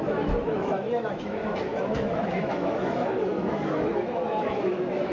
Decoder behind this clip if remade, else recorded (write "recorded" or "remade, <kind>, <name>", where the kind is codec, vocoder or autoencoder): remade, autoencoder, DAC-VAE